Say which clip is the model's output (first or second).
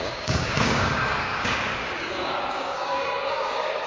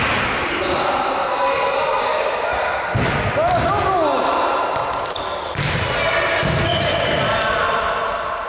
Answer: first